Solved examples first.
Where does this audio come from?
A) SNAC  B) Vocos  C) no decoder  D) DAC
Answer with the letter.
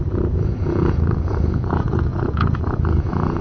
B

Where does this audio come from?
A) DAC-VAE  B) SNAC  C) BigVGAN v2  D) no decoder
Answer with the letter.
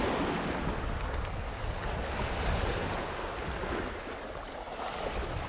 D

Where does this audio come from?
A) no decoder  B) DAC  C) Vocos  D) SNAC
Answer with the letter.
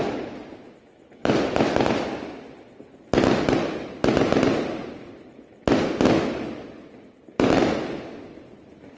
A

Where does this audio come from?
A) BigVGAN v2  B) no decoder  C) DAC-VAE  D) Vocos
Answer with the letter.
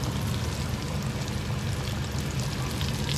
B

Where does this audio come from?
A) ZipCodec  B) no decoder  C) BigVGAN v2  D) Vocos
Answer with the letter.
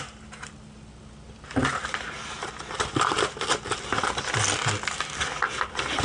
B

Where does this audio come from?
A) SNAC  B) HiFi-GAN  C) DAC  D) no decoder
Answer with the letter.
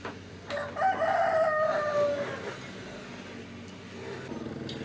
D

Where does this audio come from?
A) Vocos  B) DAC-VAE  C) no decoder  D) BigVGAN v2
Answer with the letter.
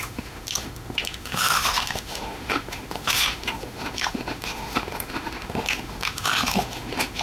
B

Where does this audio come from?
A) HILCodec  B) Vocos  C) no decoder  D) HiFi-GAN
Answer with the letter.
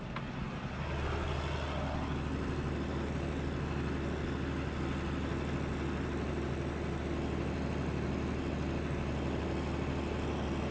C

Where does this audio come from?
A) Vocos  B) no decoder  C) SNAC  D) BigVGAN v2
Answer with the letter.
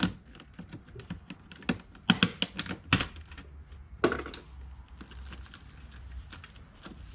B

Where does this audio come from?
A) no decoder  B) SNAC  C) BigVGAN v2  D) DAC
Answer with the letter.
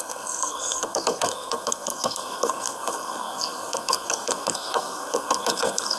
B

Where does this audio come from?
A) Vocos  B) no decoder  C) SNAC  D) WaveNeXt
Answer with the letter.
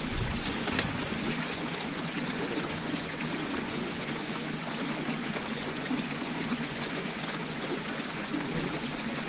A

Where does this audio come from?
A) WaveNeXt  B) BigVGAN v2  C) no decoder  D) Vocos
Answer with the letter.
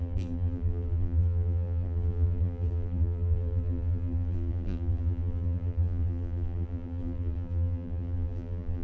B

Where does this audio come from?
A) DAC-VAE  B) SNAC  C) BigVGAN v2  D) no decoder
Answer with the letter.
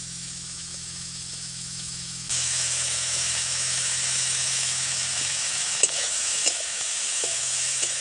A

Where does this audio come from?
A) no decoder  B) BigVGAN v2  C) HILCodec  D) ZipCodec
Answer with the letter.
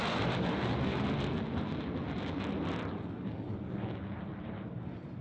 A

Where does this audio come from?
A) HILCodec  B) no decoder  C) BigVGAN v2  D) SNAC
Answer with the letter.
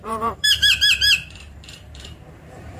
C